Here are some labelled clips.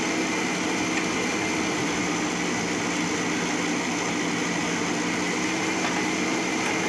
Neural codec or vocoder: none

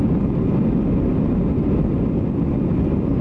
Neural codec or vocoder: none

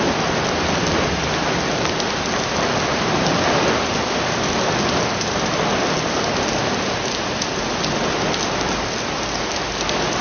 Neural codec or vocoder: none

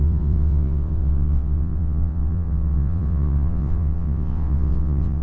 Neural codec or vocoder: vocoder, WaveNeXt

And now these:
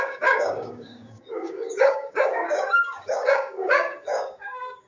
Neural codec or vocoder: codec, DAC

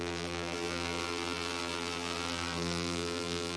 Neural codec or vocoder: vocoder, BigVGAN v2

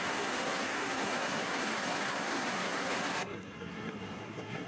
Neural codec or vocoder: codec, SNAC